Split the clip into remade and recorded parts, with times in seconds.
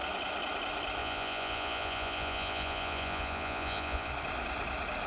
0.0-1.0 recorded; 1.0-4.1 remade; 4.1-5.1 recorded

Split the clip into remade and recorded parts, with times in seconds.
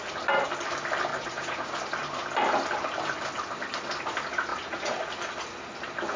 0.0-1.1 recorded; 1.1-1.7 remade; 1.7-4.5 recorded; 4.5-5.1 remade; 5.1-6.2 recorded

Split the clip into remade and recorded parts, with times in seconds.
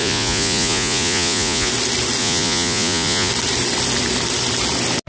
0.0-1.7 remade; 1.7-2.2 recorded; 2.2-3.3 remade; 3.3-5.1 recorded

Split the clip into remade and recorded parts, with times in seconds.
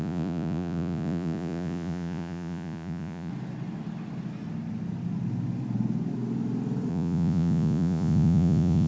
0.0-3.3 remade; 3.3-6.9 recorded; 6.9-8.9 remade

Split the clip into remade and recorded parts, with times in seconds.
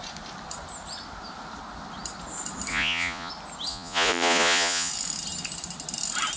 0.0-2.7 recorded; 2.7-3.3 remade; 3.3-3.7 recorded; 3.7-4.9 remade; 4.9-6.4 recorded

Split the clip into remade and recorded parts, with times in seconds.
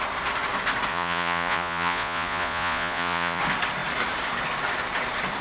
0.0-0.9 recorded; 0.9-3.4 remade; 3.4-5.4 recorded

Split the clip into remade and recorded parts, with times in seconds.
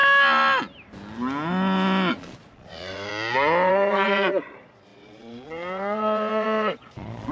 0.0-2.1 recorded; 2.1-3.1 remade; 3.1-3.7 recorded; 3.7-7.3 remade